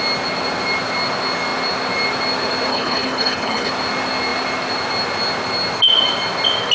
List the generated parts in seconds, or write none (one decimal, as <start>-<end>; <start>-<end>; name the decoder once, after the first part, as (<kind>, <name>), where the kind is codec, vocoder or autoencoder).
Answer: 2.7-3.7 (codec, HILCodec)